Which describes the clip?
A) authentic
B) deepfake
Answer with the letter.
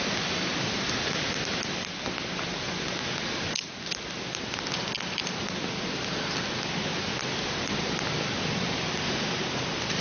A